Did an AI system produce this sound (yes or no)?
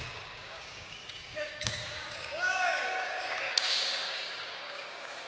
yes